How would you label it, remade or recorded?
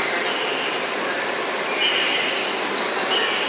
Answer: recorded